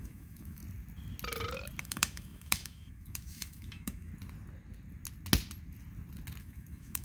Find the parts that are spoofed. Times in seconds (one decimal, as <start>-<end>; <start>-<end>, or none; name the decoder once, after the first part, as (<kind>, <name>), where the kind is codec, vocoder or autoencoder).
0.0-0.6 (autoencoder, DAC-VAE); 1.8-4.1; 6.4-7.0